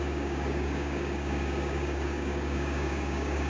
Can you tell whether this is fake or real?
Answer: fake